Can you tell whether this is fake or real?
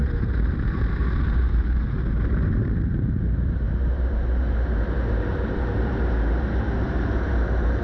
fake